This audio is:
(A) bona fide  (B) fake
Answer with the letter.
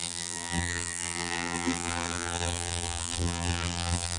B